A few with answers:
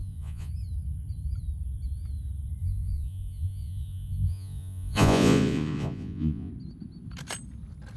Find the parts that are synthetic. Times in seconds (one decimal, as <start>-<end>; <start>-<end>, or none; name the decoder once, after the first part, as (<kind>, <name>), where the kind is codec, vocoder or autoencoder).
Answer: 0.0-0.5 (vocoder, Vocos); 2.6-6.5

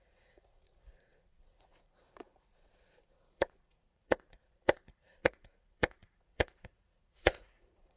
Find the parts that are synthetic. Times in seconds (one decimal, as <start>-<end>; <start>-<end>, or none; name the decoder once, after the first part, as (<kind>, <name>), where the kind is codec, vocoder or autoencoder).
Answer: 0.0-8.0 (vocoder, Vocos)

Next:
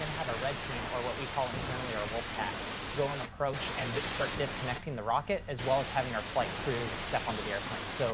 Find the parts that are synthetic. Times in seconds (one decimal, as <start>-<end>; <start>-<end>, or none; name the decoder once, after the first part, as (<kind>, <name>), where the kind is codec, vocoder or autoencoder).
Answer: 3.1-4.3 (vocoder, Vocos)